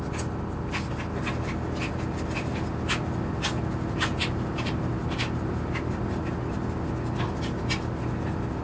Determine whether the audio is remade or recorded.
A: recorded